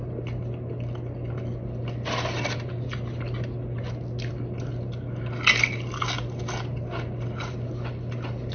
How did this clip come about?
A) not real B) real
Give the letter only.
B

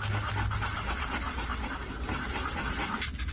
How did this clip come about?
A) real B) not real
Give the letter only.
A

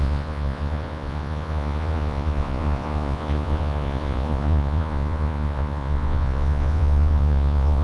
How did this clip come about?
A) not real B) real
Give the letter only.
A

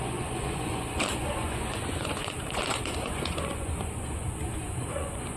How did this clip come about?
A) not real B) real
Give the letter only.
A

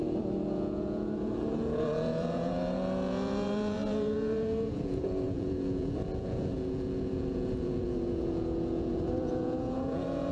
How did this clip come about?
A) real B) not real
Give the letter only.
B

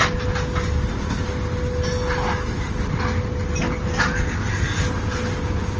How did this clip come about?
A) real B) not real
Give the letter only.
A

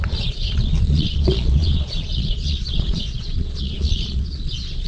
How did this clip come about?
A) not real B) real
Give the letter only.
A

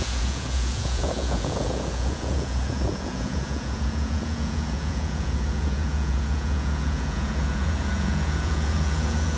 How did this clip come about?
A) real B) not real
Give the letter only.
B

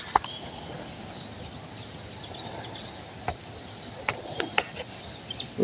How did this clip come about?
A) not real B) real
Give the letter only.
B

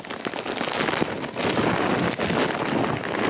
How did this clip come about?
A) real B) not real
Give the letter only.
A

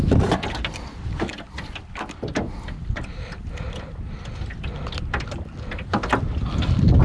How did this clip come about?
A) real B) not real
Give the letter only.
A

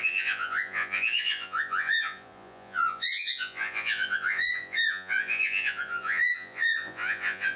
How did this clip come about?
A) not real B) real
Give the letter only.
A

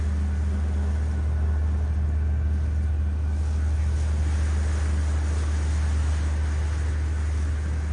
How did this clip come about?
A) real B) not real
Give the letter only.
A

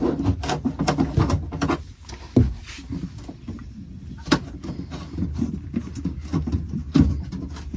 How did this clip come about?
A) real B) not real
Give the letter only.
A